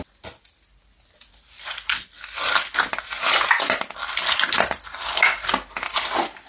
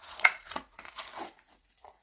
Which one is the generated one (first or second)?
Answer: second